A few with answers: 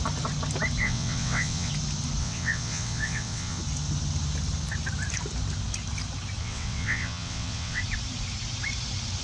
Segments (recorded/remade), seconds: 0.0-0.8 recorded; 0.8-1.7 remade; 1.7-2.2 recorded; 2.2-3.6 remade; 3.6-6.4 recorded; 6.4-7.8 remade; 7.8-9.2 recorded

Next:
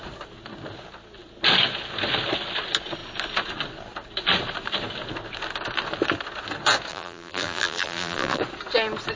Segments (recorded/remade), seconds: 0.0-6.9 recorded; 6.9-8.4 remade; 8.4-9.2 recorded

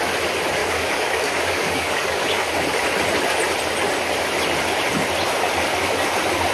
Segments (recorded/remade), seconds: 0.0-0.6 recorded; 0.6-2.5 remade; 2.5-6.5 recorded

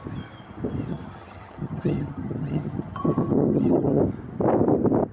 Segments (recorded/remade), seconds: 0.0-0.9 recorded; 0.9-4.0 remade; 4.0-5.1 recorded

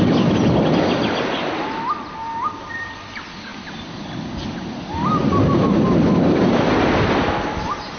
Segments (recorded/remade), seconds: 0.0-8.0 recorded

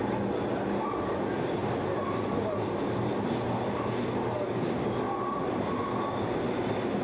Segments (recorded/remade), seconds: 0.0-7.0 recorded

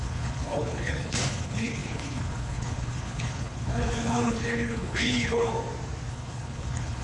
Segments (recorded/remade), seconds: 0.0-5.5 remade; 5.5-6.1 recorded; 6.1-7.0 remade

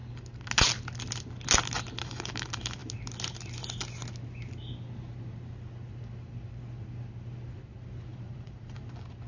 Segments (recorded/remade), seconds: 0.0-8.1 recorded; 8.1-8.8 remade; 8.8-9.3 recorded